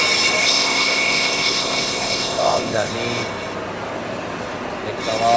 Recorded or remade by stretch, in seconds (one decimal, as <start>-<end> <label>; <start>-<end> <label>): 0.0-0.4 recorded; 0.4-2.9 remade; 2.9-5.4 recorded